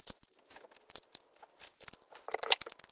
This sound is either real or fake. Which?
real